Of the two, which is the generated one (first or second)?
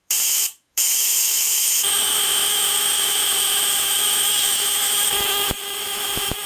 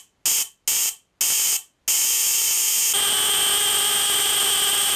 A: first